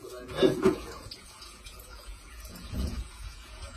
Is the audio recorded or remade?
remade